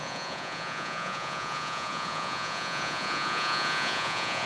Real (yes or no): no